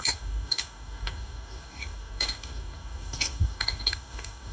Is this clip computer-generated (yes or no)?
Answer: yes